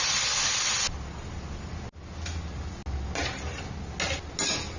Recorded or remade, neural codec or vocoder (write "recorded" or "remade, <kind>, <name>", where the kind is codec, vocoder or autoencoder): recorded